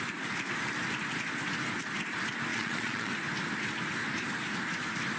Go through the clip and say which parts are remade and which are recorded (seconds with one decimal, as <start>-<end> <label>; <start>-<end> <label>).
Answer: 0.0-2.5 recorded; 2.5-3.1 remade; 3.1-5.2 recorded